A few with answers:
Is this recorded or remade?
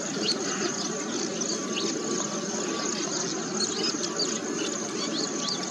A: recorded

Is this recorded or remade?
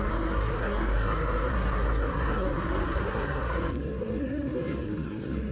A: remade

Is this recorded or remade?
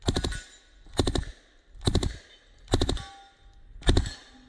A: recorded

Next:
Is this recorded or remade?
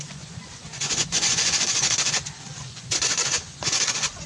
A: remade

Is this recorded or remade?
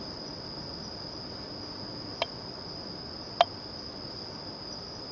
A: recorded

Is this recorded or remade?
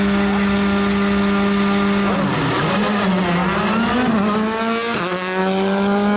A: recorded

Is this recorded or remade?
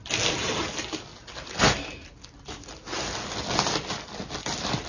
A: recorded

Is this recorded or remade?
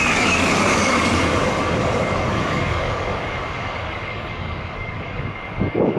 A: remade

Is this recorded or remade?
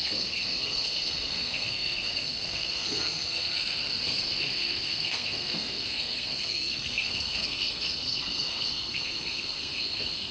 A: remade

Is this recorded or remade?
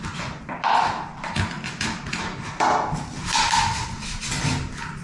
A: recorded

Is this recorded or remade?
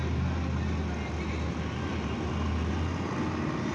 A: recorded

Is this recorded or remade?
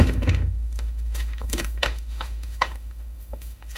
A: remade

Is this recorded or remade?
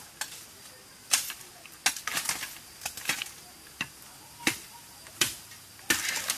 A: recorded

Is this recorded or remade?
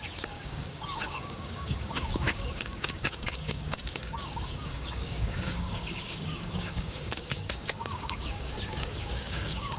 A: remade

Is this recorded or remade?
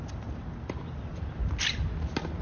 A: recorded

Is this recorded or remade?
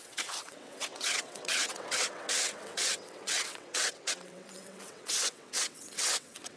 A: remade